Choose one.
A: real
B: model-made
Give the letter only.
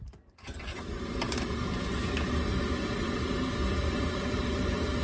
B